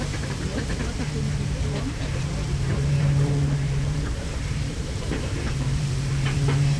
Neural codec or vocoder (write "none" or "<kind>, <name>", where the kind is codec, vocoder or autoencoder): vocoder, BigVGAN v2